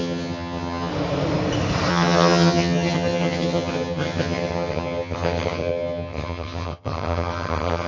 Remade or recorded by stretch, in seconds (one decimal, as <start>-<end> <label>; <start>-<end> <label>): 0.0-0.9 remade; 0.9-1.9 recorded; 1.9-7.9 remade